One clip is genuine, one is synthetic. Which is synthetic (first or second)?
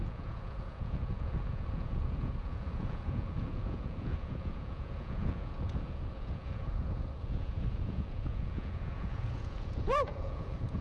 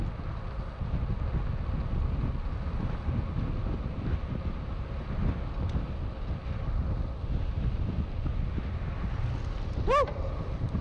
first